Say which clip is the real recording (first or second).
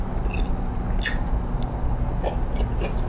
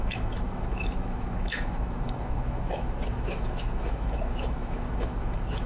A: first